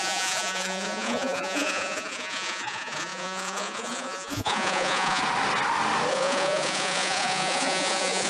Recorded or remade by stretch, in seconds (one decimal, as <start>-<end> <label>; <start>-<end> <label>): 0.0-5.2 remade; 5.2-6.1 recorded; 6.1-8.3 remade